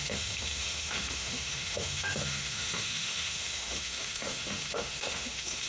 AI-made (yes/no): yes